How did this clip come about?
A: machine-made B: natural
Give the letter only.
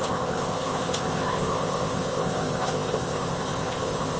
A